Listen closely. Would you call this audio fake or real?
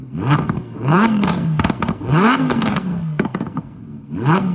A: fake